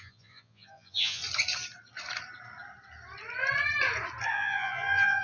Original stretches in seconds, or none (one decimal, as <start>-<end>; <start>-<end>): 1.2-4.3